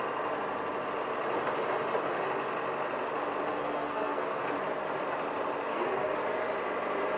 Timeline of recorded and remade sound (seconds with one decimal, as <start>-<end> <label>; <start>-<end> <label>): 0.0-3.5 recorded; 3.5-4.4 remade; 4.4-5.7 recorded; 5.7-6.2 remade; 6.2-7.2 recorded